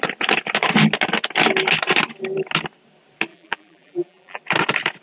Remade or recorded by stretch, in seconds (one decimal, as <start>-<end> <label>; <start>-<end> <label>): 0.0-3.3 recorded; 3.3-4.4 remade; 4.4-5.0 recorded